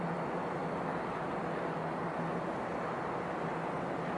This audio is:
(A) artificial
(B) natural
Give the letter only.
B